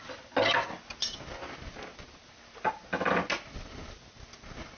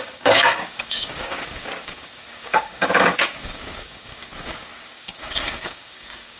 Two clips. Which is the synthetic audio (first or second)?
second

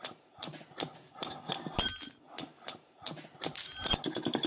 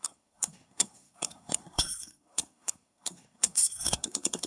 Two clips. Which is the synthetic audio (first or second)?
second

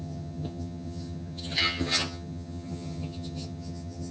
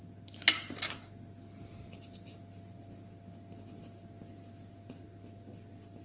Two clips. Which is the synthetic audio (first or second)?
first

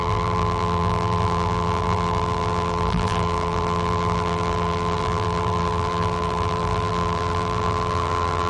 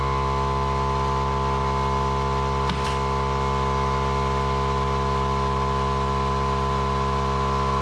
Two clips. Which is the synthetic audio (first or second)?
first